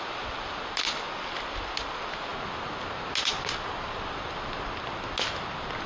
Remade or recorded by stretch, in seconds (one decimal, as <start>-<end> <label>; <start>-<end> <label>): 0.0-5.9 recorded